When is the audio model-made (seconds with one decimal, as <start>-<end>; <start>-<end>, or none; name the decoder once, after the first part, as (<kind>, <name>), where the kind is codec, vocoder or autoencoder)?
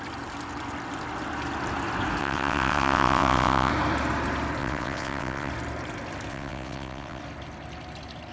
2.2-3.7 (vocoder, WaveNeXt); 4.6-5.5; 6.3-7.2